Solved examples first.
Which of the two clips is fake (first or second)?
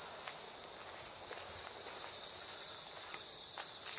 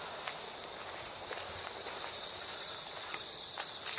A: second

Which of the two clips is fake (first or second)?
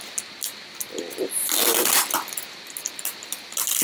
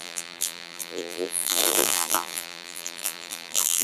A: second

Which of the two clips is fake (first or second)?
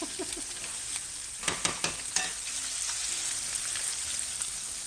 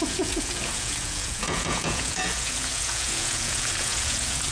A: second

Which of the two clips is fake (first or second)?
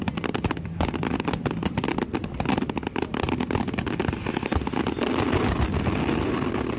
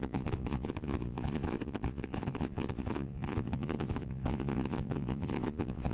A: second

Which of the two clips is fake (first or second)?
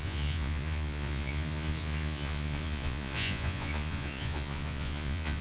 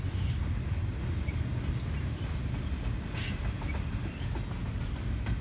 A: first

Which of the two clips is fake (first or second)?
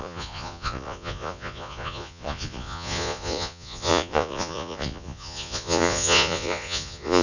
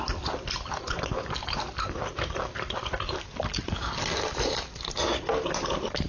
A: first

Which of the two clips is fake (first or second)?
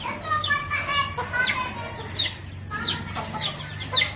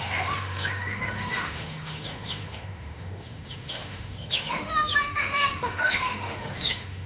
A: second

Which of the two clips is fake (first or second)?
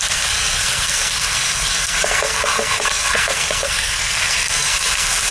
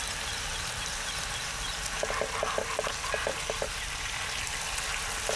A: first